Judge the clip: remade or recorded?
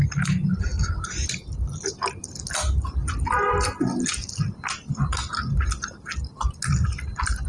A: recorded